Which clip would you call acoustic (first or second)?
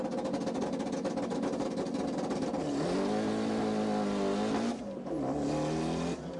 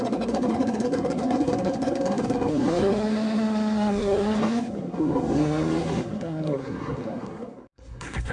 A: first